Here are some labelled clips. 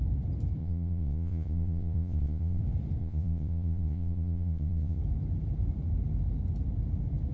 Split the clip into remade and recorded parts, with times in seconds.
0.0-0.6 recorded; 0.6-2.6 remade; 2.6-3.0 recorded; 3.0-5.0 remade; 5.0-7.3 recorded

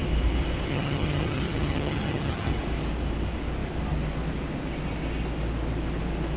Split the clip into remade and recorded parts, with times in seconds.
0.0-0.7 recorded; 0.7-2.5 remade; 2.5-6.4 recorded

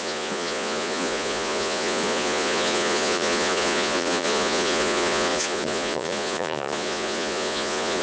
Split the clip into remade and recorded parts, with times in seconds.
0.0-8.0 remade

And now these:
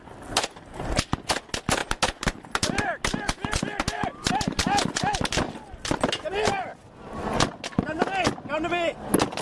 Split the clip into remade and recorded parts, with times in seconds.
0.0-9.4 recorded

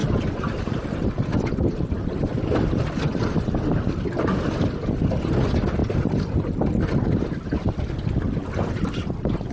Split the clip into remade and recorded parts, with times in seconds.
0.0-9.5 recorded

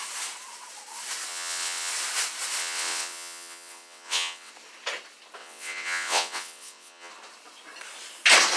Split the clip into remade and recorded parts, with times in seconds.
0.0-1.3 recorded; 1.3-1.9 remade; 1.9-2.6 recorded; 2.6-4.5 remade; 4.5-5.4 recorded; 5.4-7.1 remade; 7.1-8.6 recorded